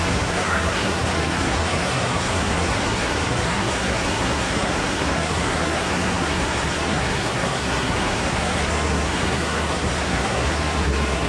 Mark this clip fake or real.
fake